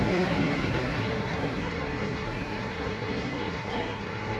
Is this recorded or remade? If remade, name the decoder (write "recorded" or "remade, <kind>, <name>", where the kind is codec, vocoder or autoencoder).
remade, codec, SNAC